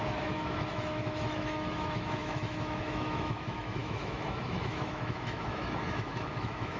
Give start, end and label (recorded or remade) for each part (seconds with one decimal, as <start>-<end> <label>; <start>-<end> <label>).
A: 0.0-6.8 remade